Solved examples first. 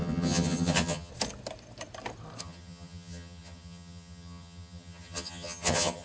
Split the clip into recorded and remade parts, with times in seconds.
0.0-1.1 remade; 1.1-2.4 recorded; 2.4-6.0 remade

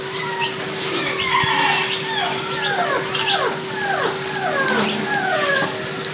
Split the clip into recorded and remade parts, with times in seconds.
0.0-6.1 recorded

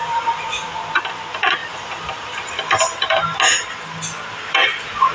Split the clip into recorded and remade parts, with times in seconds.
0.0-1.1 remade; 1.1-1.6 recorded; 1.6-2.8 remade; 2.8-5.1 recorded

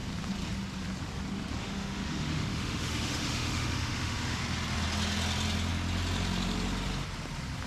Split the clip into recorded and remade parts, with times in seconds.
0.0-1.6 recorded; 1.6-4.4 remade; 4.4-7.7 recorded

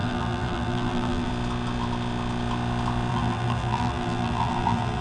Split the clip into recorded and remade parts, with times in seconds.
0.0-1.3 remade; 1.3-3.1 recorded; 3.1-5.0 remade